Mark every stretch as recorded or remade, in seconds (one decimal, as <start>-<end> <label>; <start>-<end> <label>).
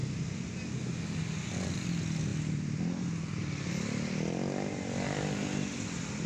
0.0-6.3 recorded